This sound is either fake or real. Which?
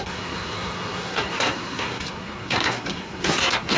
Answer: fake